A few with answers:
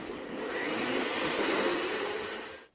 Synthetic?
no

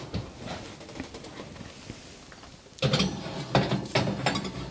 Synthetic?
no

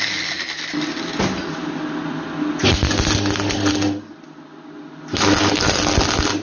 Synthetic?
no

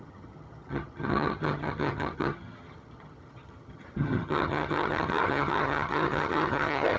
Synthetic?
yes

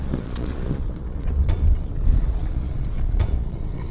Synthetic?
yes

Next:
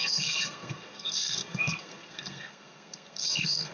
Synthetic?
yes